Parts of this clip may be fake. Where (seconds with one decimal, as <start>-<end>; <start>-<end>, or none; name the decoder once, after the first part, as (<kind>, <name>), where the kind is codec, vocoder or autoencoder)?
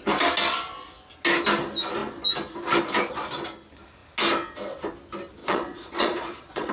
5.4-6.7 (vocoder, Vocos)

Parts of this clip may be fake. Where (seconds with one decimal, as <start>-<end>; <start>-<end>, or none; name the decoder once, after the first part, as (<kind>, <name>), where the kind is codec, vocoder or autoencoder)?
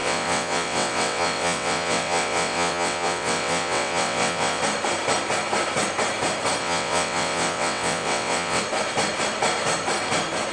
0.0-4.6 (vocoder, WaveNeXt); 6.6-8.6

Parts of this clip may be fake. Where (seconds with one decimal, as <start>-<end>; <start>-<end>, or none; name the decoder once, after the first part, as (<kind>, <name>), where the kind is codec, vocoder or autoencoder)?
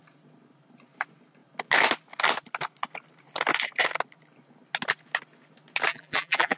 5.9-6.6 (vocoder, BigVGAN v2)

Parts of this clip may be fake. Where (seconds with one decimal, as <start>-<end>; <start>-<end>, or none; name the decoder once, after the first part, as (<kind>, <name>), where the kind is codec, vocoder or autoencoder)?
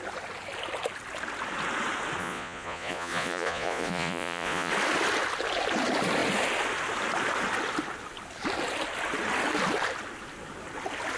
2.2-4.7 (vocoder, Vocos)